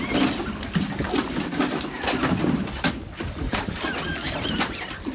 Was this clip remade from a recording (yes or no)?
no